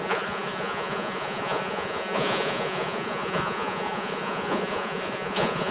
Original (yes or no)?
no